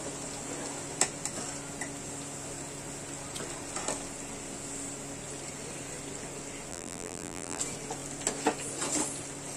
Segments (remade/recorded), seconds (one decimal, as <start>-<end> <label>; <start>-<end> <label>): 0.0-6.7 recorded; 6.7-7.6 remade; 7.6-9.6 recorded